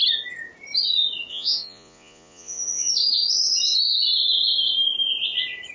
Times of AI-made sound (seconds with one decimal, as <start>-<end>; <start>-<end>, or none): 1.3-2.9